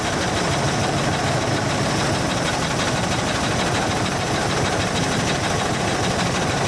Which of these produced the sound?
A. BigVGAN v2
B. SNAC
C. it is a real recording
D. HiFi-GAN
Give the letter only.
C